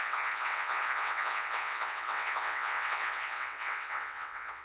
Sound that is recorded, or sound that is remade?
remade